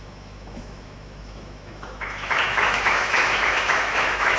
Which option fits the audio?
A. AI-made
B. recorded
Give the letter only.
A